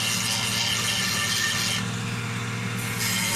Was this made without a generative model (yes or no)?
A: yes